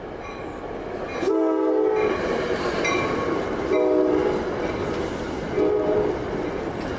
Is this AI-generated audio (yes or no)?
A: no